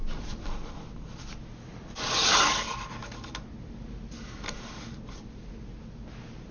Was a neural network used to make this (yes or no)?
no